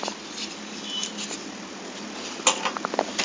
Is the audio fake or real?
fake